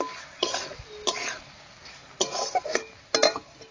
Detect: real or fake real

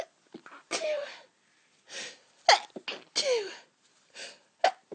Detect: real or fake real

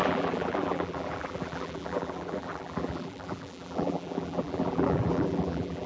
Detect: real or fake fake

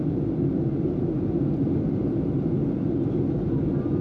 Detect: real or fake real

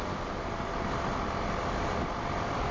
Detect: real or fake real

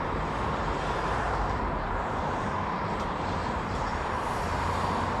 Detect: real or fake fake